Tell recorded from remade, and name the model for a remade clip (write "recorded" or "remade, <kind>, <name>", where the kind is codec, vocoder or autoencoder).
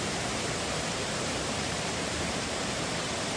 remade, vocoder, BigVGAN v2